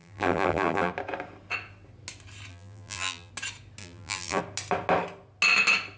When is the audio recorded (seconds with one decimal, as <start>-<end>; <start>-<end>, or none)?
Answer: 0.9-2.5; 3.3-3.8; 4.4-6.0